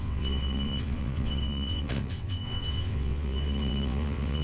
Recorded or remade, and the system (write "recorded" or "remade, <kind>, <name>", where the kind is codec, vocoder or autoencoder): remade, vocoder, WaveNeXt